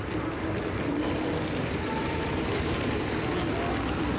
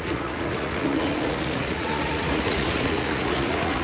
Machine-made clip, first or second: second